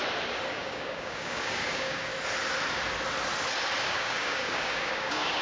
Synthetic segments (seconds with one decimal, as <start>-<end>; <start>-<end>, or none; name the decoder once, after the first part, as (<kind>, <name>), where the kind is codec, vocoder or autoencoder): 0.5-2.1 (codec, DAC); 3.8-5.4